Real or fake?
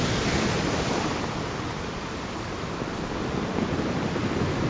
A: real